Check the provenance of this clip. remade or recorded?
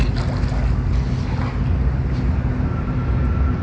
recorded